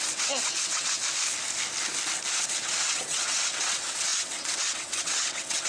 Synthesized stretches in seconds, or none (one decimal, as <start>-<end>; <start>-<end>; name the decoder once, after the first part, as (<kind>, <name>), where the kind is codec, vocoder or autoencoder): 0.0-1.0 (vocoder, WaveNeXt); 2.4-5.7